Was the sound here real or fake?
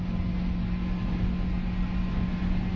real